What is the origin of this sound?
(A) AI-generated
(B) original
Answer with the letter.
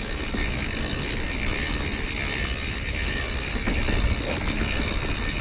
B